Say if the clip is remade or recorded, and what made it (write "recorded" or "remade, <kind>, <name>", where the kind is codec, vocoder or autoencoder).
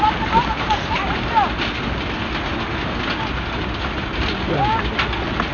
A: recorded